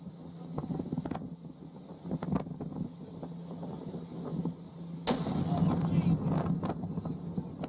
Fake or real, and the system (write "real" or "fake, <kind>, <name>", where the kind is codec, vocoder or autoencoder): real